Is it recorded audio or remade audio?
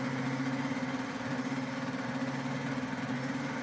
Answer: recorded